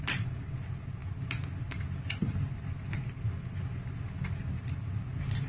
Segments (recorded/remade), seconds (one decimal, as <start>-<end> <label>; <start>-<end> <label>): 0.0-5.5 recorded